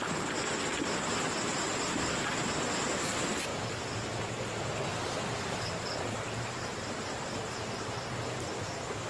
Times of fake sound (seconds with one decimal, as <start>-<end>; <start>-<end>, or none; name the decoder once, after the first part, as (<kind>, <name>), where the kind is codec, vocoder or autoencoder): none